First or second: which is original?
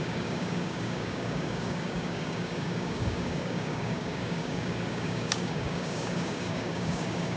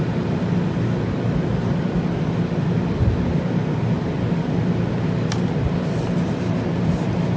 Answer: second